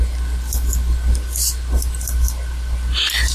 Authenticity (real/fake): real